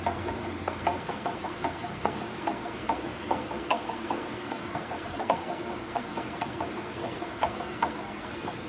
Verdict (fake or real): fake